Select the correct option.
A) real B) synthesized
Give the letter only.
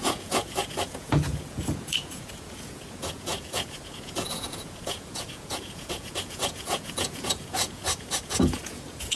B